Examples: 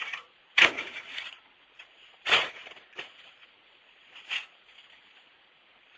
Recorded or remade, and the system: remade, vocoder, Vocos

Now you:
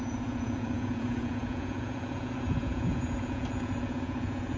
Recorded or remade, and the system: remade, vocoder, Vocos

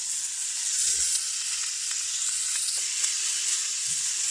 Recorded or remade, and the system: remade, vocoder, Vocos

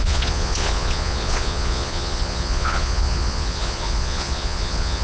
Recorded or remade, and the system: remade, vocoder, Vocos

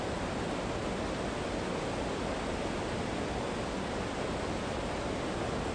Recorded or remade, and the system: recorded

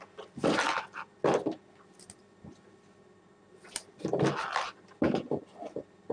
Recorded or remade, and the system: recorded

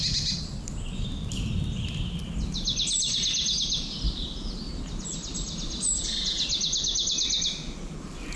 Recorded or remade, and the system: recorded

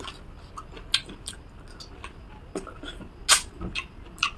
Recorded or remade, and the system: recorded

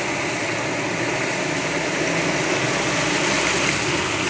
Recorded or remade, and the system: recorded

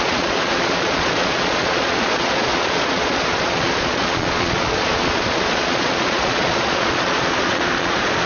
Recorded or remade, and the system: remade, vocoder, Vocos